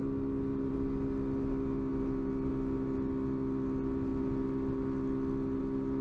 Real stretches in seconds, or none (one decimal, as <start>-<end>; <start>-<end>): 0.0-6.0